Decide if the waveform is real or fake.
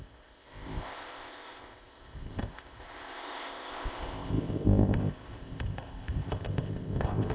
fake